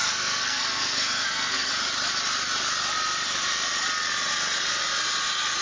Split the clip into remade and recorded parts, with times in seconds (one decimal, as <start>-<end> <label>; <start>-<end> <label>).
0.0-1.7 remade; 1.7-5.6 recorded